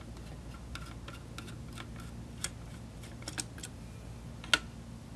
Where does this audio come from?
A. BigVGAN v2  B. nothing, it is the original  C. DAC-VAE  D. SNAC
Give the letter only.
B